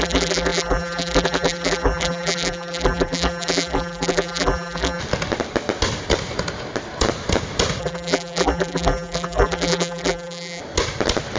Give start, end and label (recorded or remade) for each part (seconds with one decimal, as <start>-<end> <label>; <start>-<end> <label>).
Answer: 0.0-5.0 remade; 5.0-7.8 recorded; 7.8-10.6 remade; 10.6-11.4 recorded